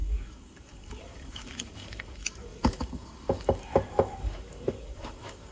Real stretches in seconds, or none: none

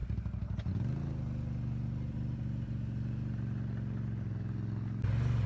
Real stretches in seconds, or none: 0.0-5.5

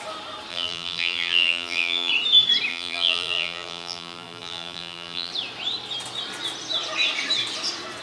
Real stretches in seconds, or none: 0.0-0.5; 2.1-2.7; 5.3-8.0